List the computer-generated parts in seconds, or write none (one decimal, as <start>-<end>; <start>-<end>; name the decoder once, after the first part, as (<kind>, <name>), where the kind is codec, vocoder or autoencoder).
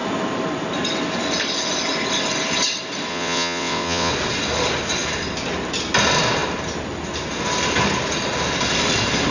3.1-4.1 (vocoder, WaveNeXt)